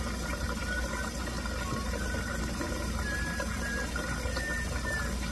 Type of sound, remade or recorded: recorded